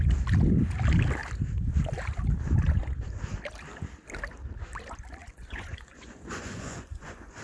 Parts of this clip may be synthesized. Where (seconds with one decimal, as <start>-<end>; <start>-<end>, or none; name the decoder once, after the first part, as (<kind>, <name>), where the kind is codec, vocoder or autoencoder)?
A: 5.2-7.4 (vocoder, Vocos)